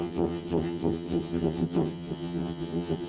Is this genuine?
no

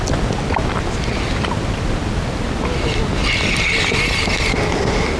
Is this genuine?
yes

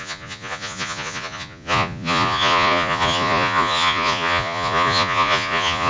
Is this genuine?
no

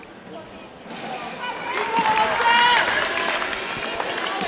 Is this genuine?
yes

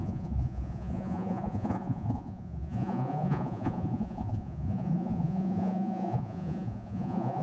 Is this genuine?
no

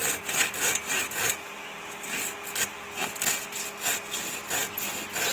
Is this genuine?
yes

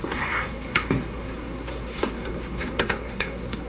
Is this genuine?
no